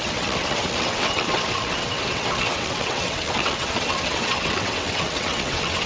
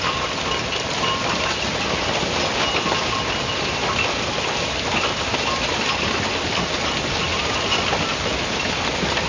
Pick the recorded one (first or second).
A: second